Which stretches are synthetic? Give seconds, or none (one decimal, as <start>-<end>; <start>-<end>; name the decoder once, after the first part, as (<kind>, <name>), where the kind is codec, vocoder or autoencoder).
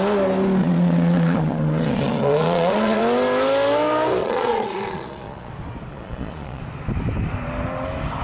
0.6-3.0 (vocoder, Vocos); 4.2-5.5; 5.9-6.6